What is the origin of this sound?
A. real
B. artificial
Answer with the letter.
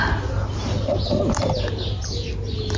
A